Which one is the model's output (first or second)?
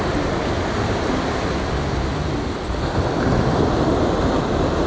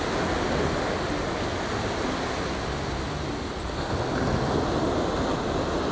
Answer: first